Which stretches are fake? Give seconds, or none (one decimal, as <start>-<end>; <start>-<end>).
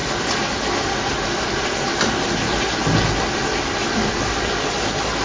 0.0-2.6